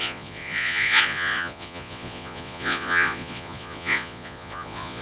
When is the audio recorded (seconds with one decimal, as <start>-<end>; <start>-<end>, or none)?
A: none